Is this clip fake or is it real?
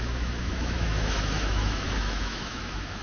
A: fake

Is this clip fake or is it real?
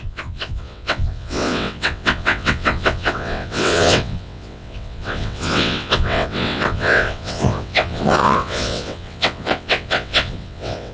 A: fake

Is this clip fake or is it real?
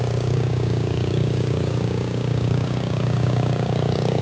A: fake